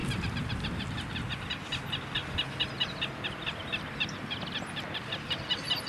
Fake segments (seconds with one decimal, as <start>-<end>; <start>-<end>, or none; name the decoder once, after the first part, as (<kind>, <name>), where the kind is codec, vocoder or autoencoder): none